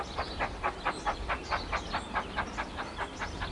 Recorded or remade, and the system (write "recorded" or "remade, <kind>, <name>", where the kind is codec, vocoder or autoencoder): recorded